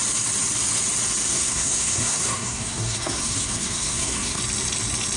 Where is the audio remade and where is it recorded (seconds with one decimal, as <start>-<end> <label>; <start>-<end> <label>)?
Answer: 0.0-1.3 recorded; 1.3-4.4 remade; 4.4-5.2 recorded